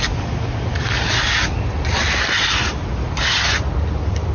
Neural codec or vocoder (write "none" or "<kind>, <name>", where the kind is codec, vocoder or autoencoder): none